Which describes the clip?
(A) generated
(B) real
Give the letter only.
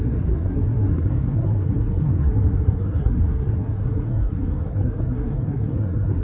A